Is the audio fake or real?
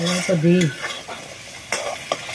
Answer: real